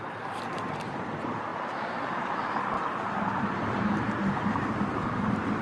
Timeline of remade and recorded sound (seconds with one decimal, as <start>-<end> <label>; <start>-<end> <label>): 0.0-5.6 remade